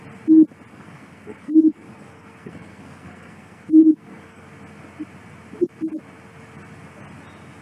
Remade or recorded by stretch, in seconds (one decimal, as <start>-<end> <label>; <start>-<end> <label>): 0.0-0.7 recorded; 0.7-4.5 remade; 4.5-7.6 recorded